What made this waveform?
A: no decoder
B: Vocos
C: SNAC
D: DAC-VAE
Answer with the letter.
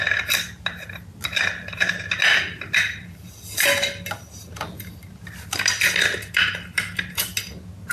A